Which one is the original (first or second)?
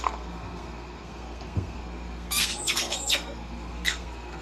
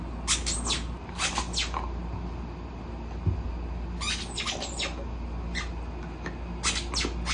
second